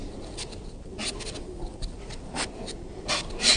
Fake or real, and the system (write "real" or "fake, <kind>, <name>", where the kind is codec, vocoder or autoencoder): real